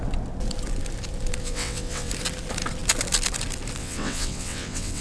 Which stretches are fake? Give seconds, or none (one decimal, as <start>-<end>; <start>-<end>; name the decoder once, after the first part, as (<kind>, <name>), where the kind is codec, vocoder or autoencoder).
1.4-2.1 (vocoder, WaveNeXt); 3.8-5.0